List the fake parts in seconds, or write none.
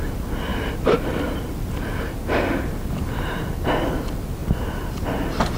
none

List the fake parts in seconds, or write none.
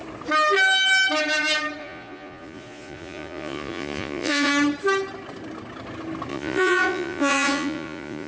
1.8-4.5 (vocoder, Vocos); 6.3-8.3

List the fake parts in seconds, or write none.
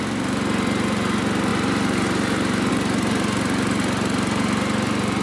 none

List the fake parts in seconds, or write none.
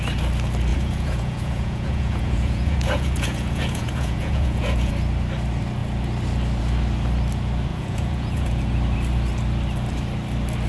0.7-4.9 (vocoder, Vocos); 7.7-8.6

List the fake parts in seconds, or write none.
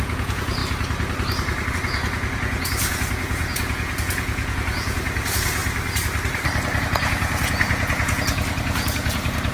0.0-0.6 (vocoder, Vocos); 1.7-5.6; 6.8-9.5